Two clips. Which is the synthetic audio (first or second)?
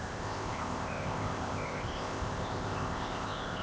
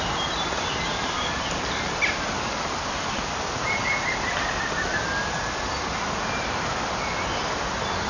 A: first